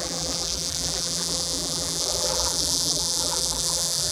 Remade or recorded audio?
remade